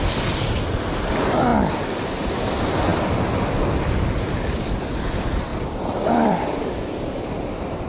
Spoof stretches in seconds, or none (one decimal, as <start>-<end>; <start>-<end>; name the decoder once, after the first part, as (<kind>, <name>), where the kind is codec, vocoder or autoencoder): 5.5-7.0 (vocoder, BigVGAN v2)